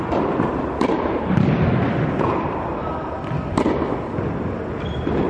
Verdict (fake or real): real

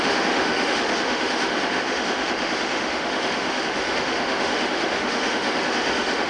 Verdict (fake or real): fake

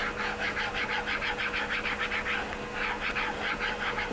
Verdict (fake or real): real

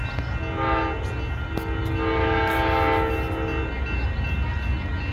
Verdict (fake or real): real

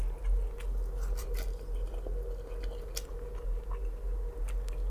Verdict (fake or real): real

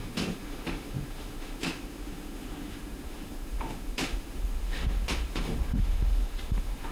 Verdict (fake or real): fake